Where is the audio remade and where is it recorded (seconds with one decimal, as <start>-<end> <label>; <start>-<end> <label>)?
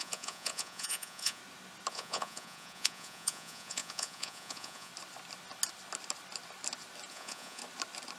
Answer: 0.0-1.4 remade; 1.4-1.9 recorded; 1.9-4.9 remade; 4.9-7.1 recorded; 7.1-7.6 remade; 7.6-8.2 recorded